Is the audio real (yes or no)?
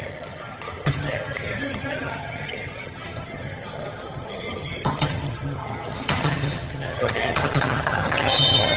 no